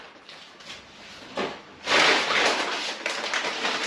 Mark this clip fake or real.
fake